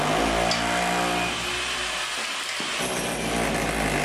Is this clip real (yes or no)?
yes